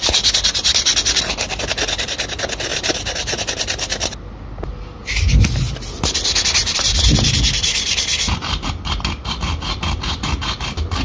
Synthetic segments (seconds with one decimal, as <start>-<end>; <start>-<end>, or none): 2.7-3.4; 6.6-9.2